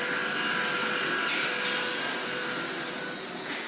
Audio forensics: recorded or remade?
recorded